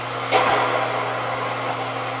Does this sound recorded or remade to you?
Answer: recorded